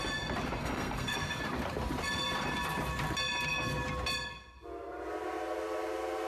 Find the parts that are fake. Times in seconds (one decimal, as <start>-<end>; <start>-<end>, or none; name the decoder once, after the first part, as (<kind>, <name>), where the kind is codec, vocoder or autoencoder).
0.6-1.4 (codec, SNAC)